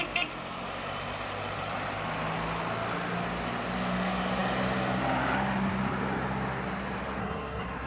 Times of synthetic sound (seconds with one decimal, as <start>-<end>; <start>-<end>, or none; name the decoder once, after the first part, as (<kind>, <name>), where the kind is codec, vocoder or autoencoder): 7.2-7.9 (codec, SNAC)